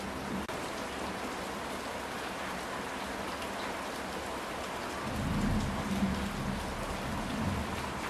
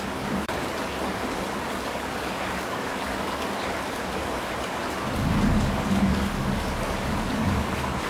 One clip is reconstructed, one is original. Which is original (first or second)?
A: first